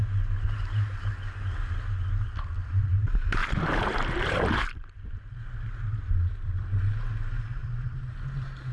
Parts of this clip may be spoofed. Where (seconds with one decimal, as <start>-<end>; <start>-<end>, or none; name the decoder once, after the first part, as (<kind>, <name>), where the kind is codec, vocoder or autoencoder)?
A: 3.4-6.7 (vocoder, BigVGAN v2); 7.6-8.1